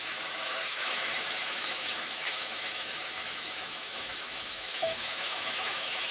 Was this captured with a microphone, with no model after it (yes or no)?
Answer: no